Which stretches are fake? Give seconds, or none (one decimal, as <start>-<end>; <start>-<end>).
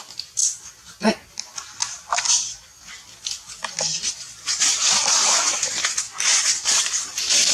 none